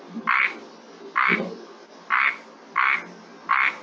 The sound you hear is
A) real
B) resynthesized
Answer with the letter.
A